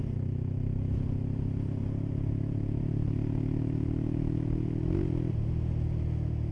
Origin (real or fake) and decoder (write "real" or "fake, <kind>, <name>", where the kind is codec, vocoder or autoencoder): real